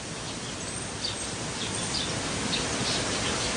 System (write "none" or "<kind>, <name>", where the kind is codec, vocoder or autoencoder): vocoder, BigVGAN v2